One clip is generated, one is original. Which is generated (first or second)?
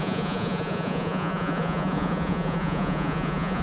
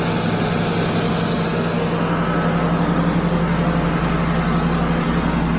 first